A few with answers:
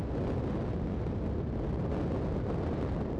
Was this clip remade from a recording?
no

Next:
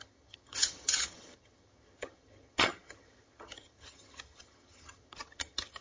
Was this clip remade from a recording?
yes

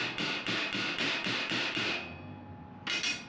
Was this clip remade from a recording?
no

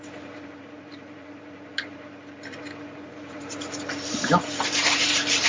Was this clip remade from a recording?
yes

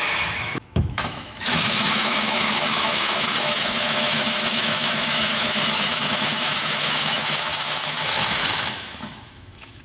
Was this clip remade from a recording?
yes